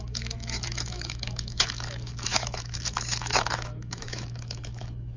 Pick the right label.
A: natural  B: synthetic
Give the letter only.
B